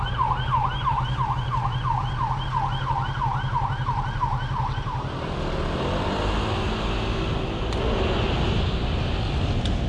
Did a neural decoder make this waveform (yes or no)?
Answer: no